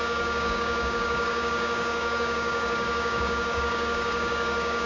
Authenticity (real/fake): fake